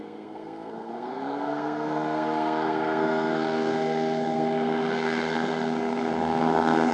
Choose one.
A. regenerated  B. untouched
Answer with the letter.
A